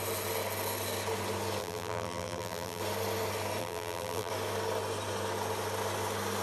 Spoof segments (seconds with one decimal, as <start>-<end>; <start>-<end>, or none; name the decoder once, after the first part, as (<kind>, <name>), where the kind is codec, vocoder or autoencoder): 1.6-2.8 (vocoder, BigVGAN v2); 3.6-4.3